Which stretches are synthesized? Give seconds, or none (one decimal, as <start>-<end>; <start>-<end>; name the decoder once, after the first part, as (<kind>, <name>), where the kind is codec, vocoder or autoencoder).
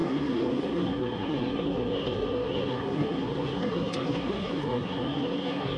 0.0-5.8 (codec, SNAC)